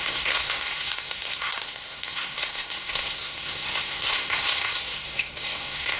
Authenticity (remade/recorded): remade